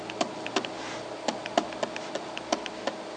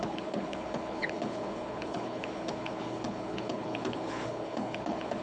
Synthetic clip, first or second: second